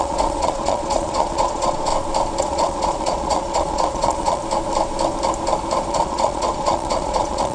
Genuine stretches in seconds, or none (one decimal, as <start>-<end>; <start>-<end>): 1.9-2.4; 4.4-5.9